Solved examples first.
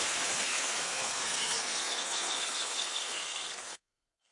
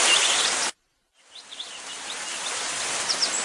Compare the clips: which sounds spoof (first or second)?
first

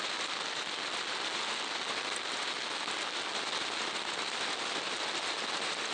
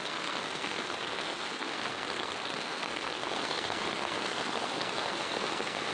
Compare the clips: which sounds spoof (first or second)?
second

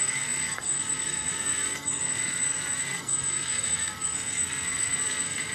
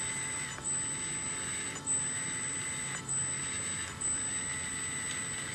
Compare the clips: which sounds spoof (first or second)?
first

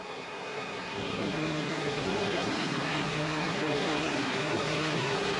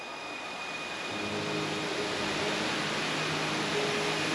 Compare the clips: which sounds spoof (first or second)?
first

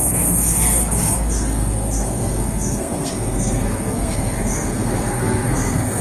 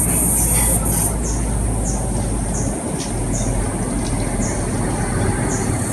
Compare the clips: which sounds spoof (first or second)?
first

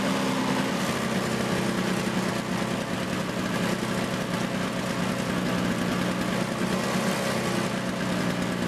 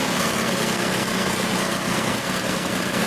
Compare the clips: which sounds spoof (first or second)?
second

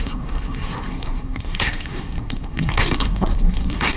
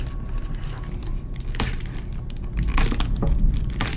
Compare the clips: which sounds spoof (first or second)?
first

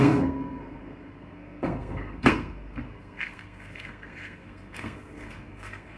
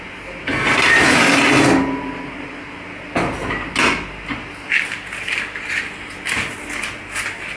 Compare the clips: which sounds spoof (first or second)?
first